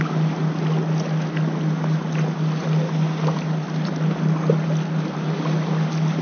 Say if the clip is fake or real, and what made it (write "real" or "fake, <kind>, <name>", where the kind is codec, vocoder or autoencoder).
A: real